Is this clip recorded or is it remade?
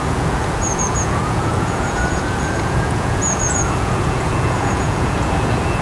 remade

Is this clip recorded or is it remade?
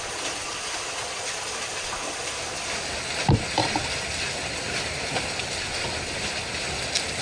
recorded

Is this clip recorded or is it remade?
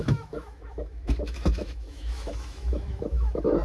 remade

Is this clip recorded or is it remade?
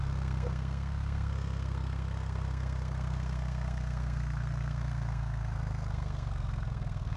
remade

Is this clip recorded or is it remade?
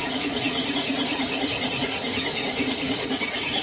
remade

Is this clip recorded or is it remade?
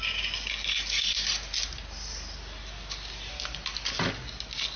recorded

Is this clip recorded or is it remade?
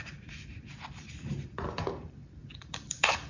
remade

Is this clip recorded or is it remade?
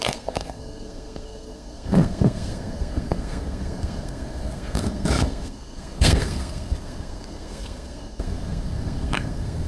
remade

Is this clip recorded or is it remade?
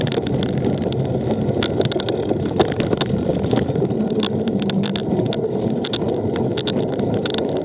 recorded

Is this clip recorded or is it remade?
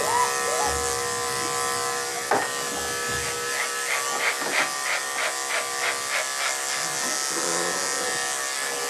recorded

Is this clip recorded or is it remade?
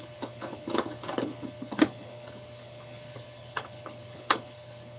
remade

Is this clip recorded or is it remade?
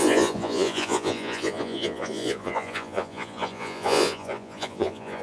remade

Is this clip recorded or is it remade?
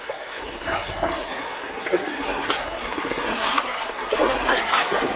remade